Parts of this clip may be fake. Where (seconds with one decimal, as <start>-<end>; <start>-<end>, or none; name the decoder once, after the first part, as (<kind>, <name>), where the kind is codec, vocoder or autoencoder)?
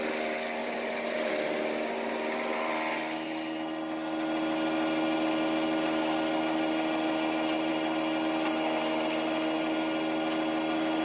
0.6-1.3 (vocoder, BigVGAN v2)